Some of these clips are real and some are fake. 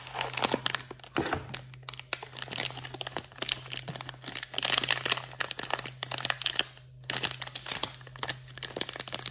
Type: real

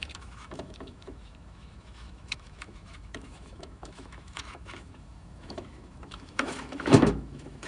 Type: fake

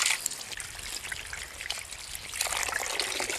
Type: real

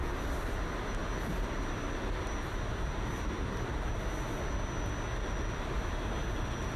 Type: real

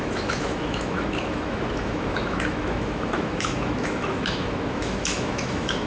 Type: fake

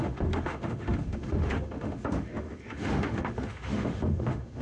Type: fake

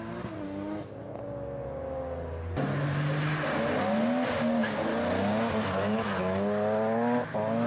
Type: real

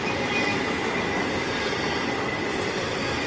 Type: real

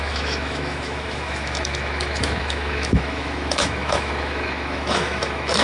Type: fake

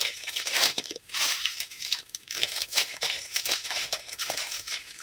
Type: fake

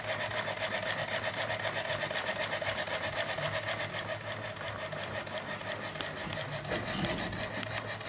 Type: real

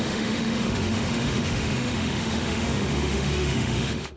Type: fake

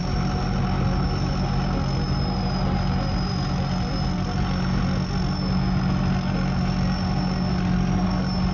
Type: real